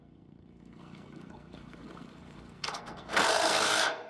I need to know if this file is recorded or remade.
remade